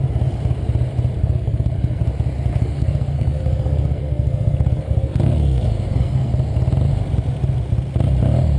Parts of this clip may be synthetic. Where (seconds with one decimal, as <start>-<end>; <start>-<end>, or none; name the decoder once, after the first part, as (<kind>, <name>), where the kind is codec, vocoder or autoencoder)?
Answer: 1.2-2.0 (codec, SNAC); 2.5-6.3